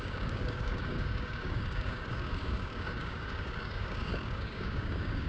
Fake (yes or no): yes